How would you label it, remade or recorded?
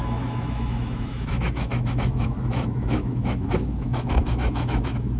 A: remade